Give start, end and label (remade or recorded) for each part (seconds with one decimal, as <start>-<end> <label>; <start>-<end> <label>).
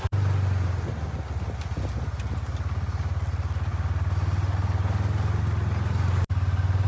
0.0-6.9 recorded